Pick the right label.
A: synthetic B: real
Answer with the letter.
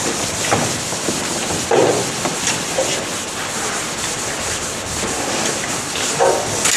A